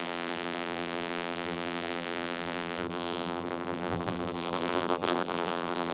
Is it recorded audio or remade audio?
remade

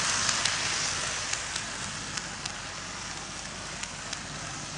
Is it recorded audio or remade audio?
recorded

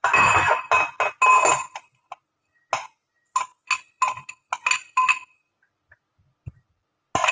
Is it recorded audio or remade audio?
recorded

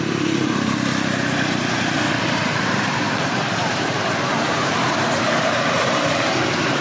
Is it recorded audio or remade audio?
remade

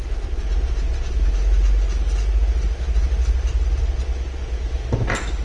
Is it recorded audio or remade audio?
recorded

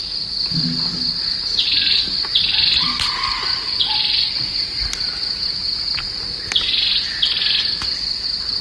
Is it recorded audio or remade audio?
recorded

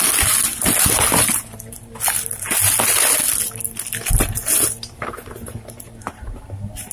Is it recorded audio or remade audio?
recorded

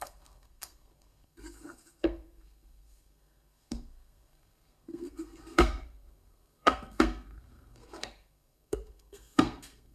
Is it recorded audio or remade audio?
remade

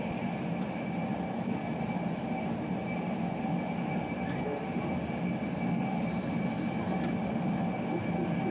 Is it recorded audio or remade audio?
recorded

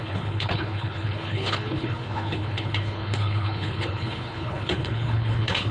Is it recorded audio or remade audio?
remade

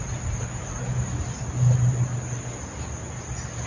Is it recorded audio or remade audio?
recorded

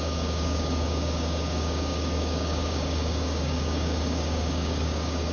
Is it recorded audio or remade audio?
remade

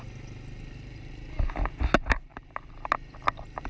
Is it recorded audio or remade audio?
recorded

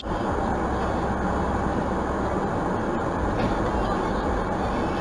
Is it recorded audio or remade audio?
recorded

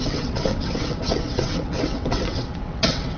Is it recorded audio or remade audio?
remade